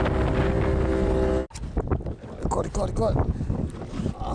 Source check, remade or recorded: recorded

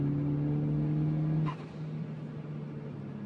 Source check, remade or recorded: recorded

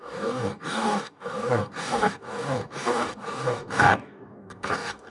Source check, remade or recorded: remade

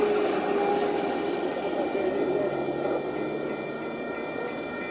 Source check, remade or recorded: recorded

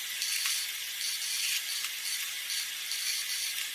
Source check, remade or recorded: recorded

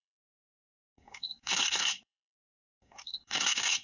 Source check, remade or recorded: remade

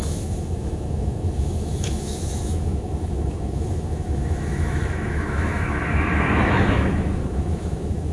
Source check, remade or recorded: remade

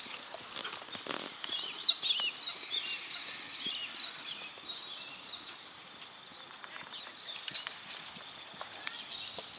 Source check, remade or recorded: recorded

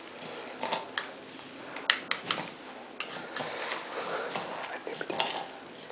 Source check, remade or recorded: recorded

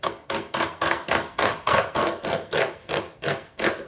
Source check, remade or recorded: remade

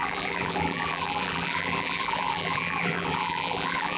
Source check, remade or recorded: remade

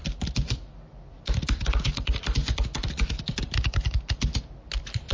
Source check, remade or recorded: recorded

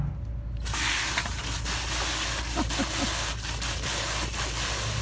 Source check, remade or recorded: recorded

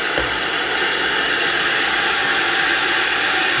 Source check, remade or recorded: recorded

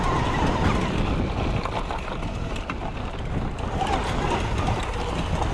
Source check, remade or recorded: recorded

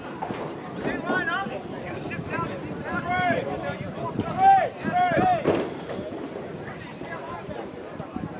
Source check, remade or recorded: remade